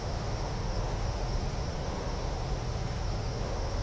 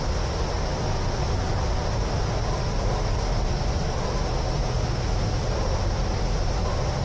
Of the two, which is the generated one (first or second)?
first